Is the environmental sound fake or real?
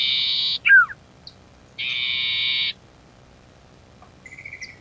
real